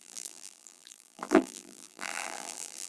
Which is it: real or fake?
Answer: fake